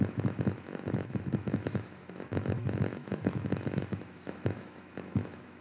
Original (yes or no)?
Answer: no